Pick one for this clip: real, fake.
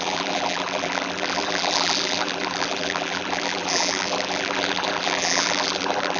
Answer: fake